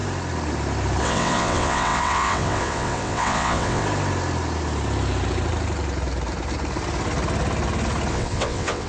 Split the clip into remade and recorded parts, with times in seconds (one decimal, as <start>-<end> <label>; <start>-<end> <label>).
0.0-1.0 recorded; 1.0-3.8 remade; 3.8-8.1 recorded; 8.1-8.9 remade